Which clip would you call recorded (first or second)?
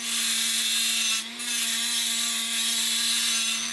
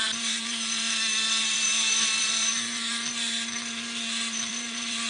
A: first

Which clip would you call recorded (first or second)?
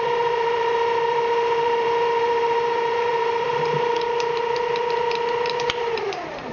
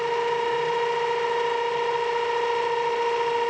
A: second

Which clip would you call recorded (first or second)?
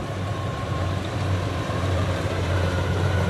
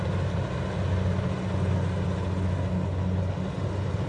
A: second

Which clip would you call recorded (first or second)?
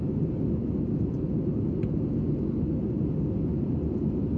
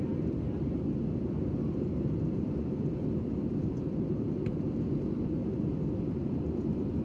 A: first